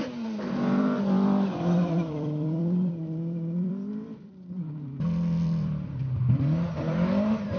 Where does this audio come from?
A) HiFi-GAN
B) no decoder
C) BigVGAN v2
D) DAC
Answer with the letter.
C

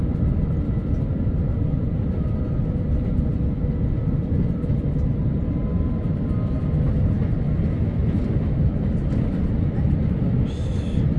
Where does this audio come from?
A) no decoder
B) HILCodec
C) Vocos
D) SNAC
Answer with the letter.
A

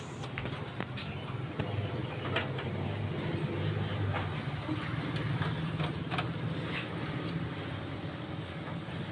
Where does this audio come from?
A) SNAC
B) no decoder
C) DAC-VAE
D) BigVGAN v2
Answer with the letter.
B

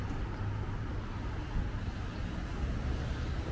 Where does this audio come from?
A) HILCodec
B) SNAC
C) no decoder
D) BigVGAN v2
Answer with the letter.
C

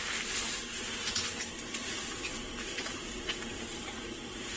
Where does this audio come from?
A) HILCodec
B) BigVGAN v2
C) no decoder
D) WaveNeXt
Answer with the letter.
C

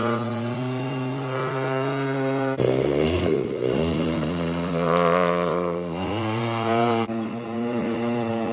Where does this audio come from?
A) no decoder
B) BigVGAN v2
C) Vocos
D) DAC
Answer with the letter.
C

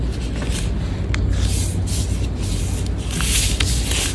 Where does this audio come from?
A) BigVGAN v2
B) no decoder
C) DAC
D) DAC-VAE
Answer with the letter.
B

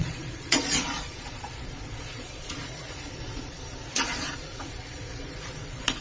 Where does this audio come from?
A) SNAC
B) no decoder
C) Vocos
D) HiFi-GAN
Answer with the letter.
C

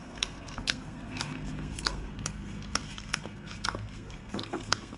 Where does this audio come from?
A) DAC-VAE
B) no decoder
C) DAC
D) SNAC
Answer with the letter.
D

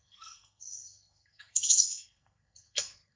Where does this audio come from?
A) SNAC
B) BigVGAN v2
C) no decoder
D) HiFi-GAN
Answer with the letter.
A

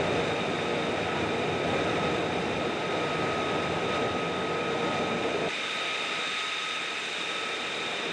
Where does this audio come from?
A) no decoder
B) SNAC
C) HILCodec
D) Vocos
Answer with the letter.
A